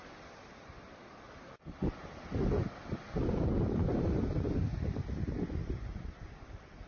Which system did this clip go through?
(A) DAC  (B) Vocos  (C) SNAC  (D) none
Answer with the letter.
D